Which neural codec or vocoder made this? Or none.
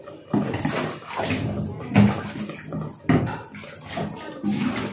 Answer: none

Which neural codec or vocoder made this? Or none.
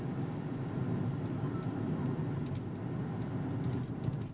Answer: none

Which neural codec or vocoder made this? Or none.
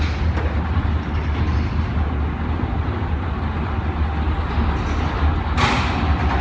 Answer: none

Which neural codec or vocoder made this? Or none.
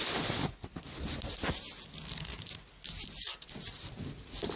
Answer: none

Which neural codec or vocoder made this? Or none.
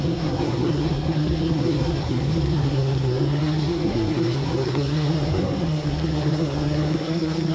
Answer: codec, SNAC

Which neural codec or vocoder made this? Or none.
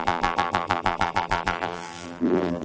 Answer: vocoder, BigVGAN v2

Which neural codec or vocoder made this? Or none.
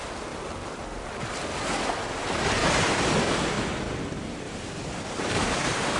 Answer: none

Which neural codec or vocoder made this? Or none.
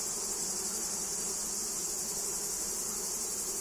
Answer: none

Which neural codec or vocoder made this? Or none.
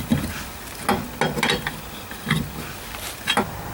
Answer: none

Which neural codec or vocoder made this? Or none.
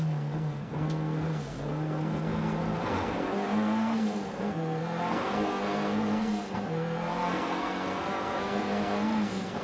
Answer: codec, SNAC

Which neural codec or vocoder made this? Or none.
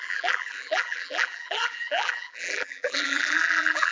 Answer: vocoder, BigVGAN v2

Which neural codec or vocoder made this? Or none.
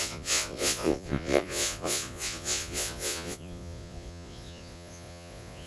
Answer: vocoder, Vocos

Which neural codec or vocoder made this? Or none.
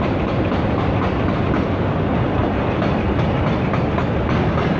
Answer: none